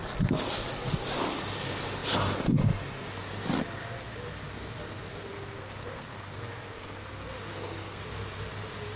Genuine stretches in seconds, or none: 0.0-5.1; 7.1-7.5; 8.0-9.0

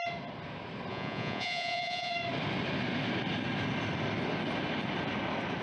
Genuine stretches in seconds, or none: 0.0-0.9; 2.1-5.6

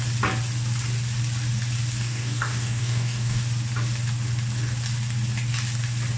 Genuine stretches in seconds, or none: 0.0-2.0; 3.4-6.2

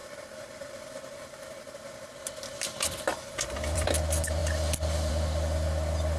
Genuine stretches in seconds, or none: 2.1-3.1; 3.9-6.2

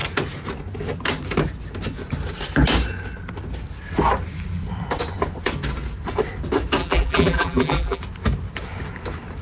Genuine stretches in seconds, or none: 0.0-6.8; 8.0-9.4